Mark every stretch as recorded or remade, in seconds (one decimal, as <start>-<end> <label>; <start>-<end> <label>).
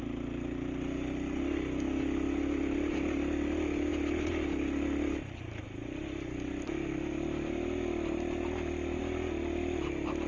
0.0-10.3 recorded